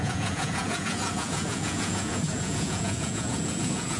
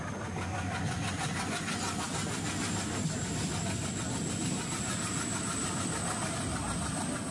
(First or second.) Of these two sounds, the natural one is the second